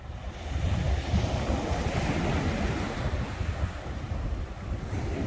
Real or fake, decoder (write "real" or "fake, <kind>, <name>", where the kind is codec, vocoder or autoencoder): real